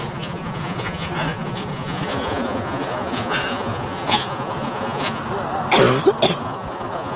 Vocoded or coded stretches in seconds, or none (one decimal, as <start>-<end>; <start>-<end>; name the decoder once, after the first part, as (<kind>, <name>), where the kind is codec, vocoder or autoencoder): 0.0-5.2 (vocoder, Vocos); 6.4-7.2